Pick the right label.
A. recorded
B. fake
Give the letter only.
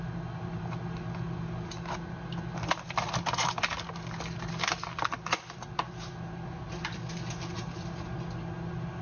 A